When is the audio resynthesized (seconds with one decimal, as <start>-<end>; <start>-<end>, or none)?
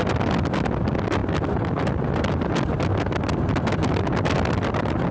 none